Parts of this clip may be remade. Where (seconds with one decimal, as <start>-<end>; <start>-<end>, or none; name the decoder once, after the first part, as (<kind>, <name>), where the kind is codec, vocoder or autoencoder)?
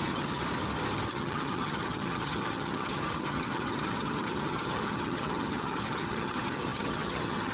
0.0-0.4 (vocoder, HiFi-GAN); 1.1-7.5